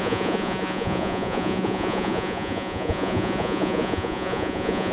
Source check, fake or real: fake